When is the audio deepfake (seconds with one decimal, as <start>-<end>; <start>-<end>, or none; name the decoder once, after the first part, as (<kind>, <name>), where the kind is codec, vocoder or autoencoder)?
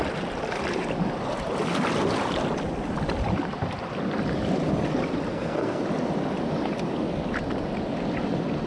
5.3-5.8 (codec, SNAC)